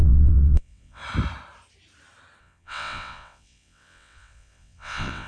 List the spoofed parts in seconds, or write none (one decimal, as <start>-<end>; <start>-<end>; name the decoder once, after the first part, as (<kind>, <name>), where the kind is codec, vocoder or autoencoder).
0.0-1.0 (vocoder, WaveNeXt); 2.4-5.3